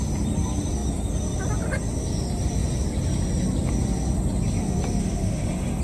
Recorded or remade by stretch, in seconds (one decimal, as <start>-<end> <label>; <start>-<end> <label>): 0.0-5.0 recorded; 5.0-5.8 remade